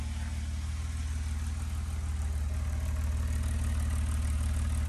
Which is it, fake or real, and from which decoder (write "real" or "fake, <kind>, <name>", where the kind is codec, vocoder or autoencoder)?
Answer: real